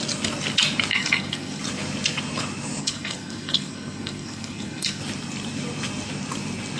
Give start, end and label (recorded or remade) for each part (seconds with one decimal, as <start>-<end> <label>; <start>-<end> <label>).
0.0-0.9 recorded; 0.9-1.6 remade; 1.6-2.8 recorded; 2.8-5.0 remade; 5.0-6.8 recorded

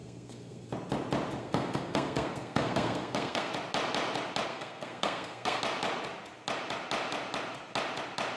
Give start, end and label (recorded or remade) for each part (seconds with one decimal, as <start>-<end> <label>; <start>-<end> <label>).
0.0-0.7 remade; 0.7-1.4 recorded; 1.4-3.5 remade; 3.5-4.5 recorded; 4.5-5.6 remade; 5.6-8.4 recorded

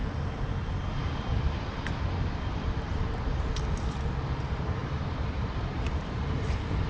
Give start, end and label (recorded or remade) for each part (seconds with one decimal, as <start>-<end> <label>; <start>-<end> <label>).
0.0-4.1 recorded; 4.1-6.9 remade

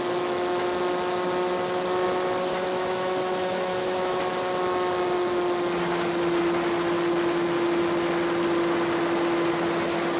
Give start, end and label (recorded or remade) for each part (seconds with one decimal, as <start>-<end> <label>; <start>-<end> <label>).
0.0-2.5 recorded; 2.5-4.2 remade; 4.2-10.2 recorded